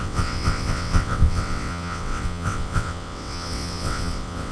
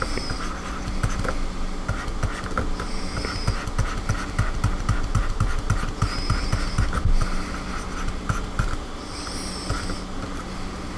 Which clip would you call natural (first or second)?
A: second